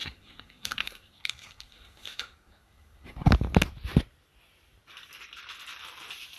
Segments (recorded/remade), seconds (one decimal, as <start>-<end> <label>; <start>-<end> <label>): 0.0-3.3 remade; 3.3-6.4 recorded